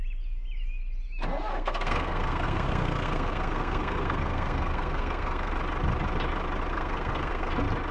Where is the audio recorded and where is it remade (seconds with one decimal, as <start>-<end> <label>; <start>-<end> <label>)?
0.0-1.5 recorded; 1.5-5.5 remade; 5.5-6.7 recorded; 6.7-7.5 remade; 7.5-7.9 recorded